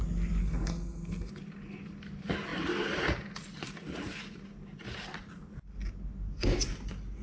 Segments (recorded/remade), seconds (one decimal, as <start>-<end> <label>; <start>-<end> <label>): 0.0-0.4 recorded; 0.4-1.3 remade; 1.3-7.2 recorded